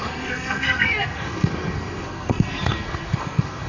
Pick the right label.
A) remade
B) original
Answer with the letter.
A